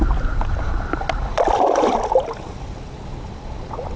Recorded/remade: recorded